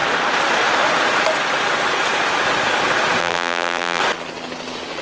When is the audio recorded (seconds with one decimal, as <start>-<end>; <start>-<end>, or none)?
0.0-3.2; 4.0-5.0